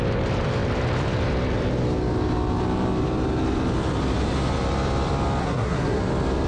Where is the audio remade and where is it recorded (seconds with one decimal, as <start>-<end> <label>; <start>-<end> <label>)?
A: 0.0-5.4 recorded; 5.4-6.0 remade; 6.0-6.5 recorded